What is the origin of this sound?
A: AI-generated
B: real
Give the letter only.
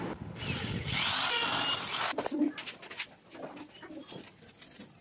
B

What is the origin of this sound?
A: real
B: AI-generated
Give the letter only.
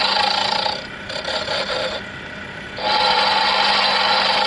A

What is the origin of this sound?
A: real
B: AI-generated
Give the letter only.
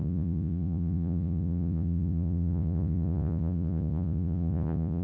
B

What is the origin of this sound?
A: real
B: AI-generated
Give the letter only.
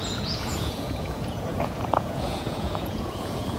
B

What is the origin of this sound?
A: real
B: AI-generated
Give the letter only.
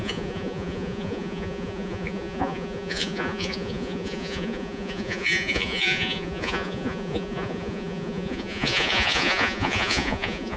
B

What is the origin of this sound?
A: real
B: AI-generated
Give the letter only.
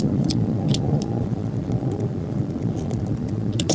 B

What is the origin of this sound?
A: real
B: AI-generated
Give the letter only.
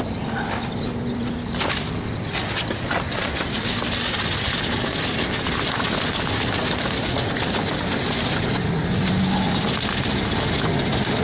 A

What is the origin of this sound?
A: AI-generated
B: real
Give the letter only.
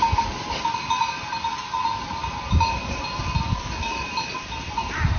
B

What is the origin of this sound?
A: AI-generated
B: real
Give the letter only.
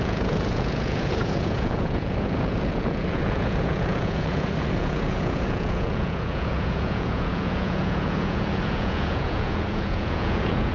A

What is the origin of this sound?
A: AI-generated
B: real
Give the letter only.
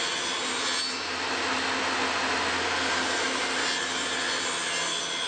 B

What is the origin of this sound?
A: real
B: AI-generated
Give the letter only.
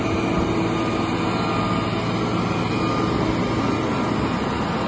A